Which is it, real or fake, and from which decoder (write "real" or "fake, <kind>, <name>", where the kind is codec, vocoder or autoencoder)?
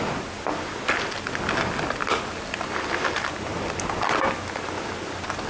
real